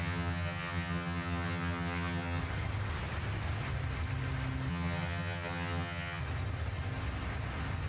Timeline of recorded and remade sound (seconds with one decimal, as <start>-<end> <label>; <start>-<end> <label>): 0.0-2.4 remade; 2.4-4.7 recorded; 4.7-6.2 remade; 6.2-7.9 recorded